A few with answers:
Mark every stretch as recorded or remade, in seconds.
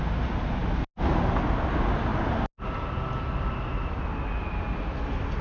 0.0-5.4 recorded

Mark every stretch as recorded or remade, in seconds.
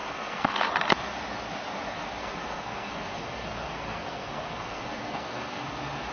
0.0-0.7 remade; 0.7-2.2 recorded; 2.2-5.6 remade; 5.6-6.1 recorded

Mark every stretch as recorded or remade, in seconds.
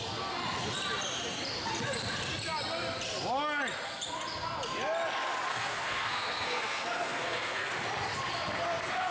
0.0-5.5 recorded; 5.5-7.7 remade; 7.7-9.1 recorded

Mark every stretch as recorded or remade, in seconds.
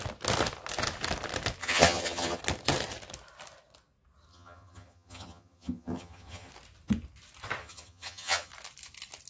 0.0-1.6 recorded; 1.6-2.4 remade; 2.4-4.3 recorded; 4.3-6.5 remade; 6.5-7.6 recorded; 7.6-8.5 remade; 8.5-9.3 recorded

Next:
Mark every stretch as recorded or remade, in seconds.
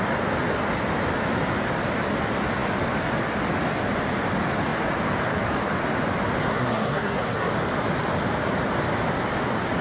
0.0-6.4 recorded; 6.4-7.5 remade; 7.5-9.8 recorded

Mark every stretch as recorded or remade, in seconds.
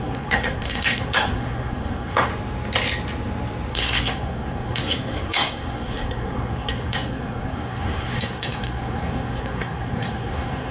0.0-2.3 remade; 2.3-3.7 recorded; 3.7-10.7 remade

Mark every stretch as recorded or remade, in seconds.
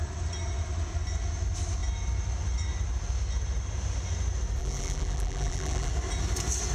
0.0-4.6 recorded; 4.6-5.9 remade; 5.9-6.7 recorded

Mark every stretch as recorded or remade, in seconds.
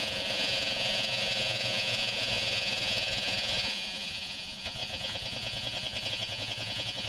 0.0-7.1 remade